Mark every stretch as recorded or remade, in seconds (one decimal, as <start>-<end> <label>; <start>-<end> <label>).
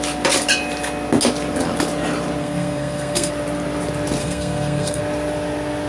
0.0-2.4 recorded; 2.4-3.3 remade; 3.3-4.2 recorded; 4.2-5.0 remade; 5.0-5.9 recorded